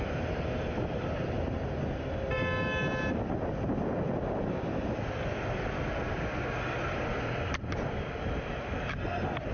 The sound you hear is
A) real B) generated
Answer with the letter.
A